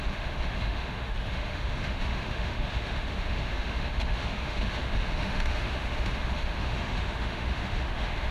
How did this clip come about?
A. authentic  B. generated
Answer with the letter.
B